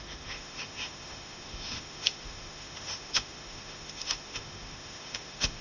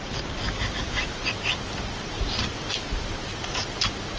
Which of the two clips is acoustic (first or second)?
second